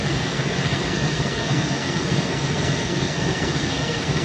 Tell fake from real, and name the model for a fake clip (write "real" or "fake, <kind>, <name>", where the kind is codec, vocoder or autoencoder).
fake, codec, SNAC